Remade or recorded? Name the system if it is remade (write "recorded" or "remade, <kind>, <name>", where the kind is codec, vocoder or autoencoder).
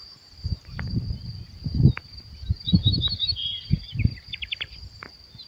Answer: remade, vocoder, BigVGAN v2